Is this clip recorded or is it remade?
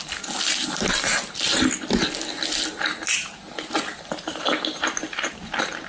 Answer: recorded